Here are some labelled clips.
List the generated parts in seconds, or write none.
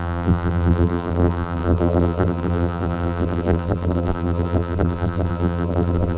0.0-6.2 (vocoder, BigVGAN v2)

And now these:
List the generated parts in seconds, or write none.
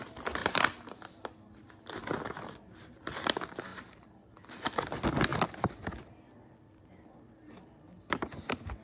0.4-1.0 (vocoder, BigVGAN v2); 3.7-4.3